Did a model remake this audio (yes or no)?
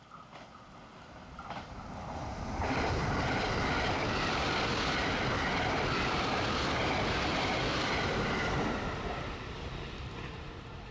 no